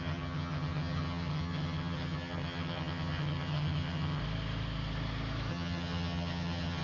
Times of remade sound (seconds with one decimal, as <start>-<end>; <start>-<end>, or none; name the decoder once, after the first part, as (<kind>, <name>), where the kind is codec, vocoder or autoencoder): 0.0-4.2 (vocoder, HiFi-GAN); 5.5-6.8